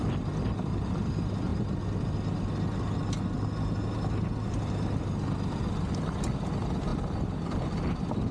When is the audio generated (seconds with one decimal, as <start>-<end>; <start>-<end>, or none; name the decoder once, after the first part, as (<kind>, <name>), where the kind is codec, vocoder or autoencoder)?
none